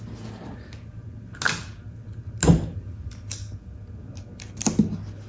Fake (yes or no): no